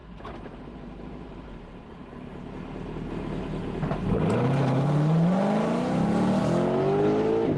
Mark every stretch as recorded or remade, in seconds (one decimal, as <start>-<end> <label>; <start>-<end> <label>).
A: 0.0-2.5 remade; 2.5-3.6 recorded; 3.6-5.3 remade; 5.3-7.6 recorded

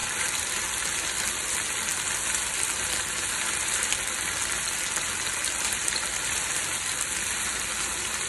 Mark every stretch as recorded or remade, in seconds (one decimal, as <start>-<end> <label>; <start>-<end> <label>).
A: 0.0-8.3 recorded

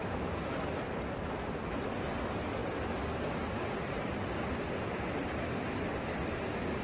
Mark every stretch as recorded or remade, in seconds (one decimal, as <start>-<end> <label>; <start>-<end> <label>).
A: 0.0-6.8 recorded

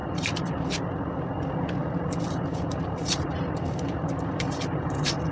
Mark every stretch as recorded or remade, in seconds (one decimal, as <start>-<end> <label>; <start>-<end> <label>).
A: 0.0-0.7 remade; 0.7-1.8 recorded; 1.8-5.3 remade

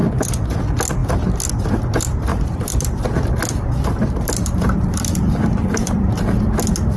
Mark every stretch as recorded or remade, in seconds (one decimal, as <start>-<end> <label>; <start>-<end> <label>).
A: 0.0-2.3 recorded; 2.3-6.5 remade; 6.5-7.0 recorded

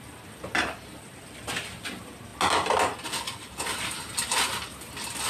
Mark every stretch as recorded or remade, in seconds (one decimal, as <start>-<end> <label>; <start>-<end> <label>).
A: 0.0-5.3 recorded

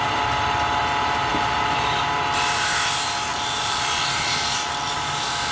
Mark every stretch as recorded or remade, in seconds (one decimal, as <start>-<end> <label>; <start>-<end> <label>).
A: 0.0-1.3 recorded; 1.3-2.0 remade; 2.0-3.3 recorded; 3.3-4.4 remade; 4.4-5.5 recorded

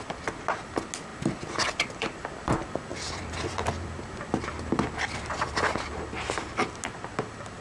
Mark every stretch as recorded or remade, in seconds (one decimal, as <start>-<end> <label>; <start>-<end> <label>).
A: 0.0-1.1 recorded; 1.1-2.3 remade; 2.3-2.9 recorded; 2.9-6.7 remade; 6.7-7.6 recorded